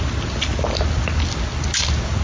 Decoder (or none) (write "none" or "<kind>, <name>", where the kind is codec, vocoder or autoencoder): none